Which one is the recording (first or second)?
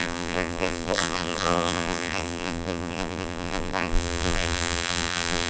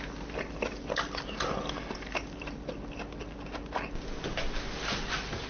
second